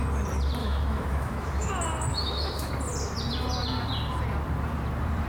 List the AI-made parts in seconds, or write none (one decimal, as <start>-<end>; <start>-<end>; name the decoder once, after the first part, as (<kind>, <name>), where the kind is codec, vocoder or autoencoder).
0.6-1.7 (autoencoder, DAC-VAE); 2.1-2.7